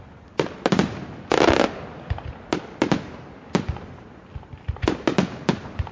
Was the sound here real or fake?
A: real